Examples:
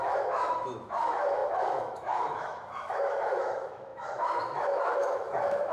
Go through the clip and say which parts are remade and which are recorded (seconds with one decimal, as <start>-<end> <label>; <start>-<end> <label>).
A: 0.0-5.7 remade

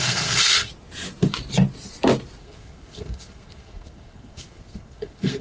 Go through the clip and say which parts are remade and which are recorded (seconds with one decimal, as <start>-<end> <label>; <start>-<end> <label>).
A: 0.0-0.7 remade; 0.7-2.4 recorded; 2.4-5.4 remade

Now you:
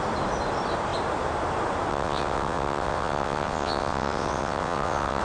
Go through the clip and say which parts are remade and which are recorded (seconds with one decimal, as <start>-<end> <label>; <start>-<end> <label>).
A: 0.0-1.9 recorded; 1.9-5.2 remade

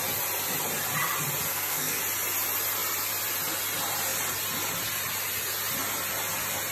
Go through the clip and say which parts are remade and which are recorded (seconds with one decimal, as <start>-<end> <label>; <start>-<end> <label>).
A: 0.0-1.5 recorded; 1.5-2.0 remade; 2.0-6.7 recorded

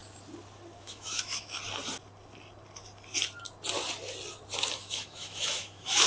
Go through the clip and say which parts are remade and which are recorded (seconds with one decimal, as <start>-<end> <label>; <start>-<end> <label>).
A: 0.0-0.8 recorded; 0.8-1.6 remade; 1.6-4.8 recorded; 4.8-6.1 remade

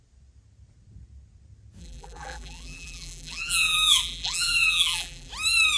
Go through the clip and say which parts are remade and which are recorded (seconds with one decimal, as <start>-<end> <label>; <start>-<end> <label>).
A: 0.0-1.8 recorded; 1.8-5.3 remade; 5.3-5.8 recorded

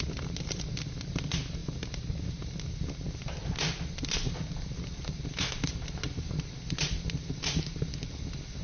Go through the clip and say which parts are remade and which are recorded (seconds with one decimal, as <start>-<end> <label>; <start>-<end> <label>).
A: 0.0-8.6 recorded